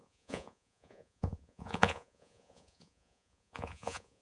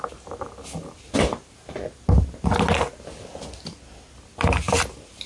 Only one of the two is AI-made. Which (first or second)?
first